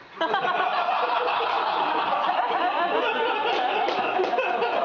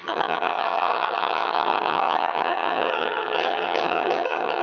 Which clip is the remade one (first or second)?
second